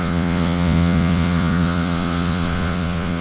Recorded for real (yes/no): no